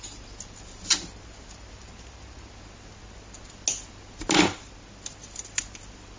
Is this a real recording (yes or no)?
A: yes